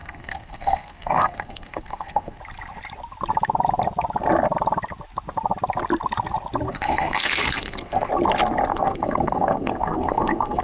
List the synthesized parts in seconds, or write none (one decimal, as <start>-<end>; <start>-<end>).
0.0-2.4; 6.7-8.1; 8.7-10.6